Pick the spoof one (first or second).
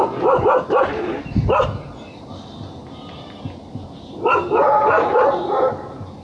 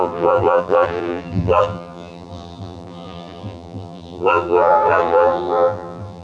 second